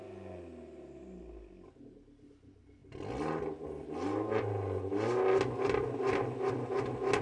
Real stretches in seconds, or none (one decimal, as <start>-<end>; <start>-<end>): 0.0-7.2